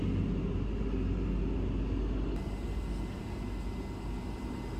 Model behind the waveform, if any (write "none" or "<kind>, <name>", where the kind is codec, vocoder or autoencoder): none